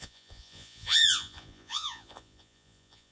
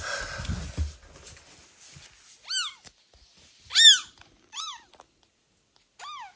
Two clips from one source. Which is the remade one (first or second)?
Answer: first